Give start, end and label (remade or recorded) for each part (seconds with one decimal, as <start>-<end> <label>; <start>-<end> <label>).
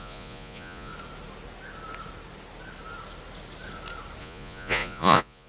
0.0-0.9 remade; 0.9-4.2 recorded; 4.2-5.5 remade